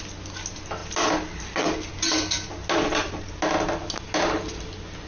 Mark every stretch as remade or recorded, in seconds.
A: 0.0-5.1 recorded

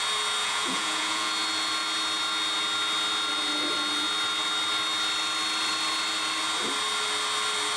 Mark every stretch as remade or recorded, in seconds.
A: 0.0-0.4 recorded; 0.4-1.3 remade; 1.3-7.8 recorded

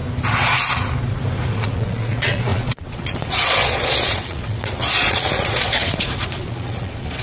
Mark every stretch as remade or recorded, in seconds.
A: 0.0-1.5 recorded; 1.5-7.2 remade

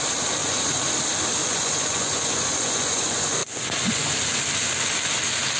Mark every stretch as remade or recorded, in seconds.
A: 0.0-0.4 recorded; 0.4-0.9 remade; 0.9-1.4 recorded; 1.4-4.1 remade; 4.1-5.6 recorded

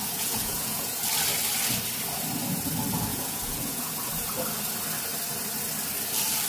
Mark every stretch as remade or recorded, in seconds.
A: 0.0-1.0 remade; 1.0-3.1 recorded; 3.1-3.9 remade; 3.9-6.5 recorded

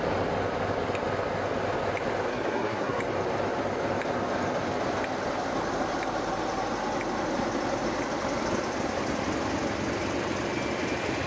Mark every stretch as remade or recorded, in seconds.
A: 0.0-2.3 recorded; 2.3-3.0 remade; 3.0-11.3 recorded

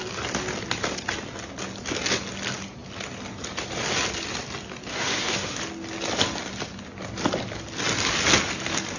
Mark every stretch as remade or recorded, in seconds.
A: 0.0-4.9 recorded; 4.9-5.6 remade; 5.6-9.0 recorded